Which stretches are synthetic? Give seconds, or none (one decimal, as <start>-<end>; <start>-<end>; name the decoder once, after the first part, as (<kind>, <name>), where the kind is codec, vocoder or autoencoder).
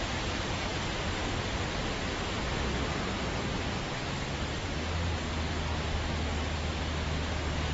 none